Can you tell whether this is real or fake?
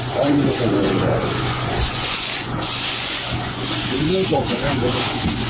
fake